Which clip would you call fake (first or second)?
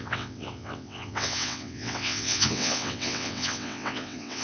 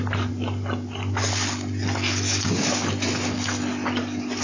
first